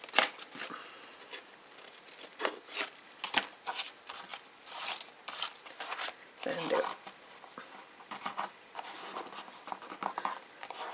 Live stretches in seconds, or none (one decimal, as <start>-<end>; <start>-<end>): 0.0-10.9